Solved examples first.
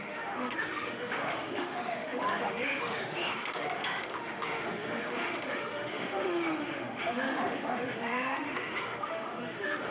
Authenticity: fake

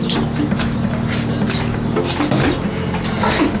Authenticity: real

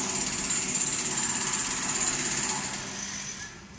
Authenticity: real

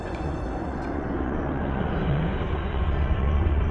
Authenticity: fake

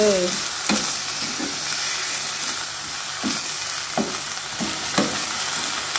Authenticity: real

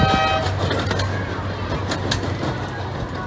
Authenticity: real